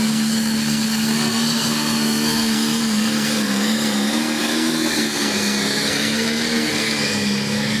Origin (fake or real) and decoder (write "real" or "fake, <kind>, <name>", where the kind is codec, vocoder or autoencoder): fake, codec, SNAC